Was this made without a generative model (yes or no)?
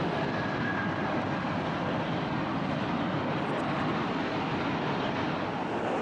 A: yes